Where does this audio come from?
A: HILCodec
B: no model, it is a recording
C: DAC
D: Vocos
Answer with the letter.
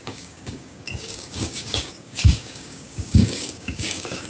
C